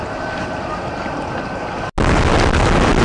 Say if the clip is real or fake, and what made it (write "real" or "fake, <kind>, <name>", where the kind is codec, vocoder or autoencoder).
real